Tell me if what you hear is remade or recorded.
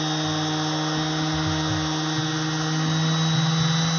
recorded